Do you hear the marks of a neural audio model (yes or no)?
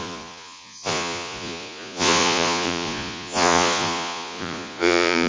yes